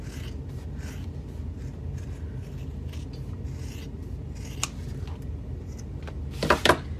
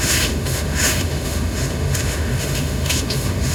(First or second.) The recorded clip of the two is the first